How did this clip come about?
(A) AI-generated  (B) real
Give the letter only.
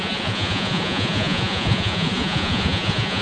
A